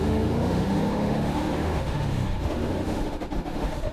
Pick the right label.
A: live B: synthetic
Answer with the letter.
B